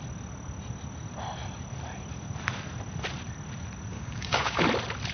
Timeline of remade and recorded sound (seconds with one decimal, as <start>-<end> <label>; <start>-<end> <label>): 0.0-3.9 recorded; 3.9-4.6 remade; 4.6-5.1 recorded